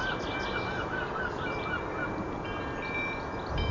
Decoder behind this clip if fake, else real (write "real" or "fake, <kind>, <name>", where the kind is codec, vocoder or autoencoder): real